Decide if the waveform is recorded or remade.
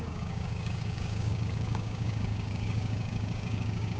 remade